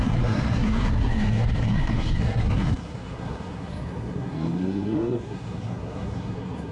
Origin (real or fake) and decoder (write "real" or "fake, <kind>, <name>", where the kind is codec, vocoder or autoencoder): fake, codec, SNAC